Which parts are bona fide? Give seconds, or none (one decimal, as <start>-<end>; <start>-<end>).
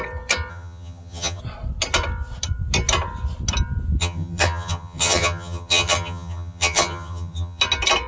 0.0-0.5; 1.4-4.0; 7.6-8.1